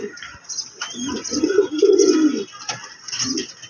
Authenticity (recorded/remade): remade